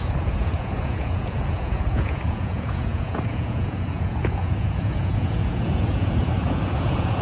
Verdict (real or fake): fake